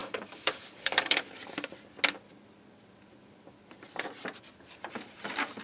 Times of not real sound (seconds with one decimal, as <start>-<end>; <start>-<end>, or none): 0.0-1.2

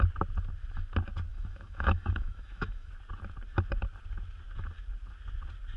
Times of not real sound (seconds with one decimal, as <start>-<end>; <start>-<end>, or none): 1.3-2.9

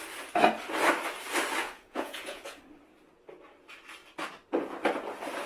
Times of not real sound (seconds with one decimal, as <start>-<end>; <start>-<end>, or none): 1.6-2.6

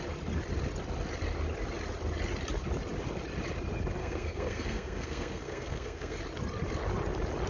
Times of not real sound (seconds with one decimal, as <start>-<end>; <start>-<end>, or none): 4.0-6.2